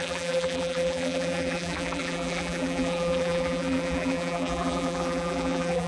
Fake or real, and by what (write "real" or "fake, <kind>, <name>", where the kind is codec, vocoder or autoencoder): fake, vocoder, BigVGAN v2